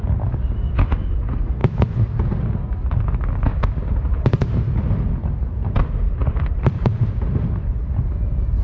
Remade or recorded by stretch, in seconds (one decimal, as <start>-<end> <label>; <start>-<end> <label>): 0.0-6.2 recorded; 6.2-8.6 remade